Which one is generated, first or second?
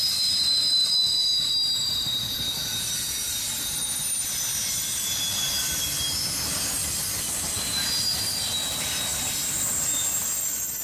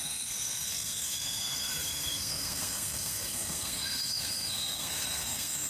second